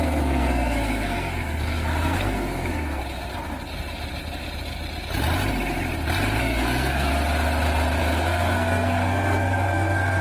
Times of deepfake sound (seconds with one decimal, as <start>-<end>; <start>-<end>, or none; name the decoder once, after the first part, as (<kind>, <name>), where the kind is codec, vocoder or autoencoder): 0.0-3.0 (codec, SNAC); 6.4-7.1; 8.0-10.2